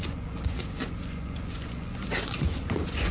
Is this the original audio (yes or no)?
no